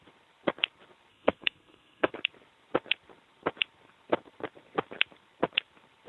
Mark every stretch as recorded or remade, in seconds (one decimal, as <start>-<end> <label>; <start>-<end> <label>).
0.0-1.1 recorded; 1.1-2.1 remade; 2.1-6.1 recorded